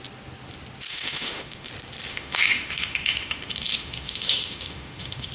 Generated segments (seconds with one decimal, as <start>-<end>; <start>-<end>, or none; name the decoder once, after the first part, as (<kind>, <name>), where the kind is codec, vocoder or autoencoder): 0.9-1.7 (autoencoder, DAC-VAE); 2.1-5.3

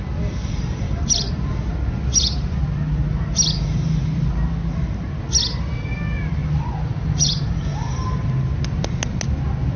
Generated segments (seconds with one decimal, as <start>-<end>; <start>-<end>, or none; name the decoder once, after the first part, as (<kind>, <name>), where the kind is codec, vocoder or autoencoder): 0.4-1.1 (vocoder, BigVGAN v2); 6.4-7.6